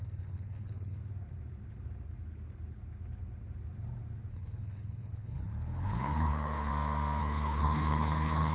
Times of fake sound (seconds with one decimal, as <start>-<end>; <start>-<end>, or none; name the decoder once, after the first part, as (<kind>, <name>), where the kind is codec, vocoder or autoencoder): 0.0-1.0 (codec, HILCodec); 4.3-6.7; 7.2-8.5